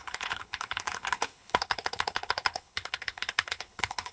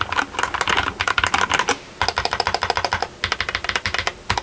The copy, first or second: first